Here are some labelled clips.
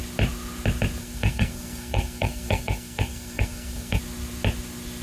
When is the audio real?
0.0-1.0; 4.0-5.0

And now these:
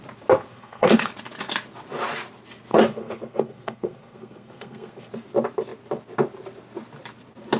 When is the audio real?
0.0-0.5; 1.1-2.7; 5.1-7.6

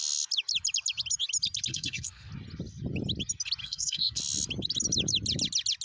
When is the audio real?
0.0-1.7; 2.3-3.6; 4.2-5.8

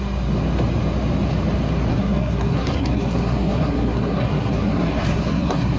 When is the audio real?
0.0-1.9